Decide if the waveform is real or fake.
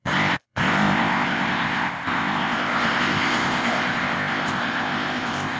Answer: fake